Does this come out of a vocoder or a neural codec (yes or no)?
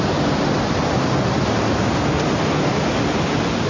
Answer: no